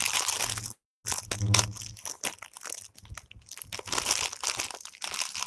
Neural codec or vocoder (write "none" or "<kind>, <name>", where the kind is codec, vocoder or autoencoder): none